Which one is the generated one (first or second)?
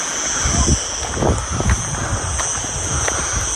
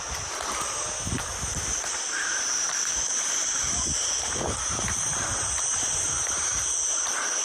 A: second